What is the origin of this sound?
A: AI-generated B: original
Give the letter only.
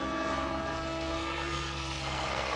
A